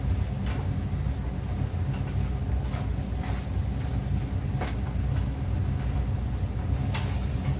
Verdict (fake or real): real